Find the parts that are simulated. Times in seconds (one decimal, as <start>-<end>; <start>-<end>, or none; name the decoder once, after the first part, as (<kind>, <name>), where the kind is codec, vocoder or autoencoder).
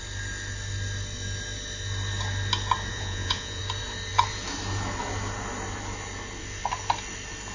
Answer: 2.9-3.6 (vocoder, Vocos)